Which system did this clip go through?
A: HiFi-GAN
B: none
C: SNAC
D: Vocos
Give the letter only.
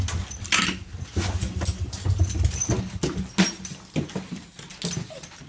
B